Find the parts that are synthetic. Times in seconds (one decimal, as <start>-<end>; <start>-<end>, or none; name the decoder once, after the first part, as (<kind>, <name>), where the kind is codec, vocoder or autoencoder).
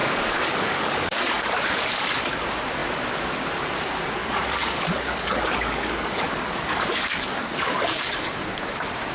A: 0.0-1.5 (codec, DAC); 4.2-8.4